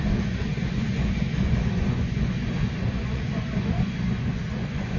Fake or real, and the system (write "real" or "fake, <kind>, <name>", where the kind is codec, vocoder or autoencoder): fake, vocoder, Vocos